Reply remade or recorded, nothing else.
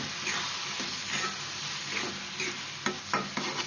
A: recorded